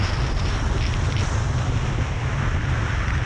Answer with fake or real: real